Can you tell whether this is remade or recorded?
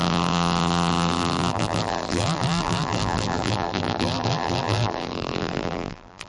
remade